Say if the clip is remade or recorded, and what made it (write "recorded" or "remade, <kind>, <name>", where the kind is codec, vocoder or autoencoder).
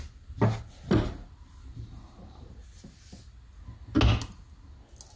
recorded